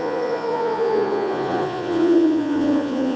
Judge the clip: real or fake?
fake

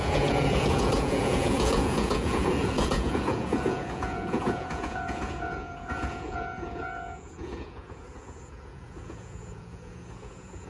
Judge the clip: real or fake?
fake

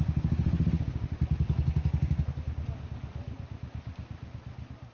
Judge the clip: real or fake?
real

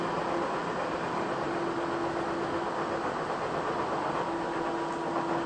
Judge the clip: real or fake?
real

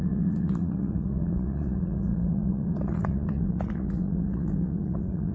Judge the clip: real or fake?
fake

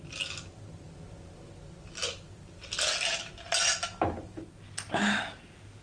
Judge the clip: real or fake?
real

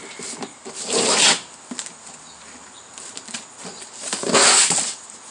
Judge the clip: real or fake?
real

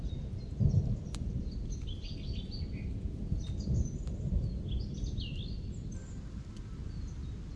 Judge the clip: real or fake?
real